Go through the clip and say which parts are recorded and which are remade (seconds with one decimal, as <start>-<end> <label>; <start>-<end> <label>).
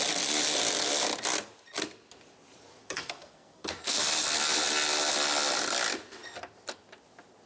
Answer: 0.0-2.8 recorded; 2.8-4.0 remade; 4.0-7.5 recorded